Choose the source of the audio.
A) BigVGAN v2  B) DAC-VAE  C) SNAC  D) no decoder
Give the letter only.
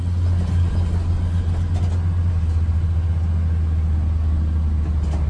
D